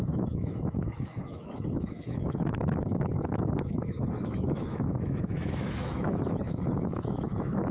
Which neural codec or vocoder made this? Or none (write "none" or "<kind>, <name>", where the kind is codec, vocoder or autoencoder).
autoencoder, DAC-VAE